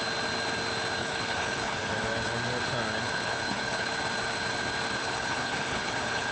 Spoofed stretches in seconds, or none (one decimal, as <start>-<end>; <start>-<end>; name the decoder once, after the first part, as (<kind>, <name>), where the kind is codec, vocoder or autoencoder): 1.0-1.8 (codec, HILCodec); 3.0-3.9; 5.0-6.3